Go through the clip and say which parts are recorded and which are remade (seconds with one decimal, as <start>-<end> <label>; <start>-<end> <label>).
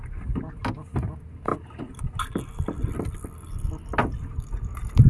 0.0-5.1 recorded